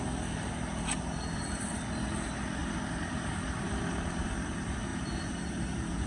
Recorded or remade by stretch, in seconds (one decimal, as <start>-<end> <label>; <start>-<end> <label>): 0.0-6.1 recorded